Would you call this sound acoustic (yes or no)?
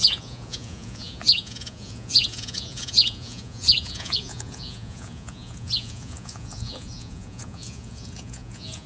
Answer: no